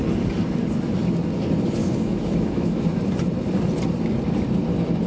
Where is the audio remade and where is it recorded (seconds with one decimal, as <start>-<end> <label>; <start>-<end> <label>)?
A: 0.0-1.8 recorded; 1.8-3.0 remade; 3.0-5.1 recorded